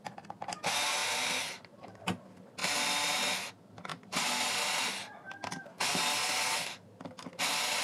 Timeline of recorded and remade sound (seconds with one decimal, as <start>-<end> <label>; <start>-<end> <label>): 0.0-1.0 recorded; 1.0-2.0 remade; 2.0-7.8 recorded